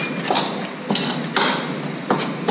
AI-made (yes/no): no